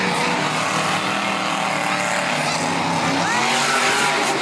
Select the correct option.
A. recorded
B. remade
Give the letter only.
A